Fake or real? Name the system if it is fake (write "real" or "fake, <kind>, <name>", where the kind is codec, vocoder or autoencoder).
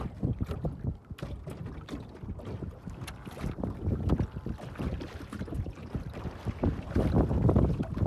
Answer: real